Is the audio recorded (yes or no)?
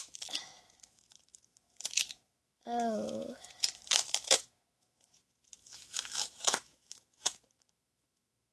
no